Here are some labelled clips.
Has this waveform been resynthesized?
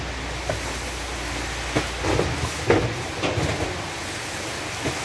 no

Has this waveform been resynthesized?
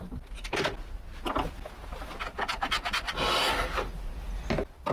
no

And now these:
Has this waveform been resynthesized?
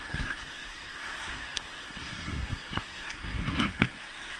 yes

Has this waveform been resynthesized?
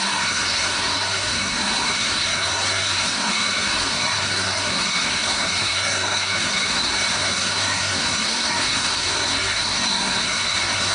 yes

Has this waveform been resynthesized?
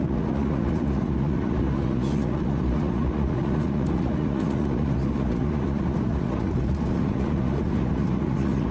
yes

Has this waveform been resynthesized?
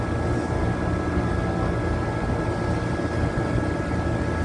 no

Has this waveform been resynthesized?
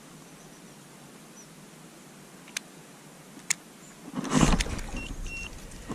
no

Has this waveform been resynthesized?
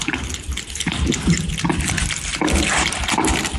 no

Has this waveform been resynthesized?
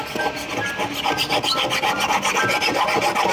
no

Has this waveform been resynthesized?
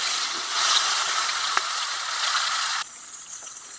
yes